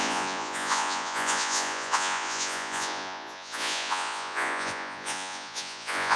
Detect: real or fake fake